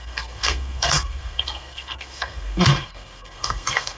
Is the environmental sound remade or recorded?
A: remade